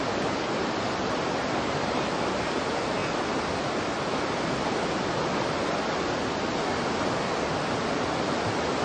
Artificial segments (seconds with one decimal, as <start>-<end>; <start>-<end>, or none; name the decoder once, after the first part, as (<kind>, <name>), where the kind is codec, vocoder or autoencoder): none